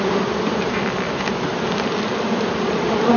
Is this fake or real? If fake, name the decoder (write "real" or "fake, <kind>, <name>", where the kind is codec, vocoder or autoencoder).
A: real